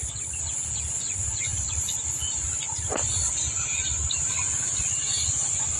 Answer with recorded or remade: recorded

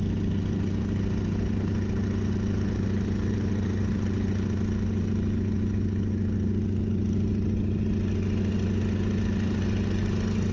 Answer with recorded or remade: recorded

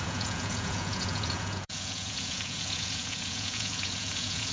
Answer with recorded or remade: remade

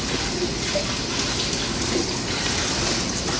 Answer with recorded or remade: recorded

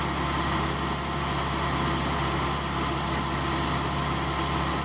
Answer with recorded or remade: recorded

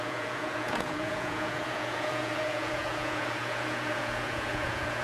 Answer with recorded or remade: remade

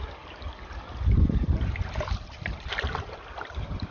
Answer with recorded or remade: recorded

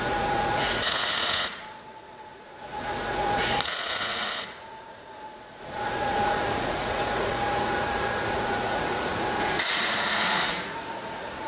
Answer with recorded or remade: remade